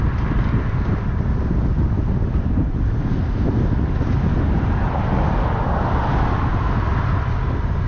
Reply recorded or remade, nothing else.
recorded